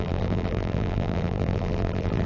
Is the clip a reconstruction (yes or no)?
yes